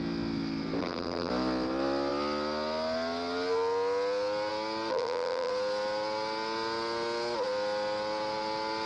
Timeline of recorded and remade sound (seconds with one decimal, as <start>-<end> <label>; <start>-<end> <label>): 0.0-0.8 recorded; 0.8-1.3 remade; 1.3-4.9 recorded; 4.9-5.5 remade; 5.5-8.9 recorded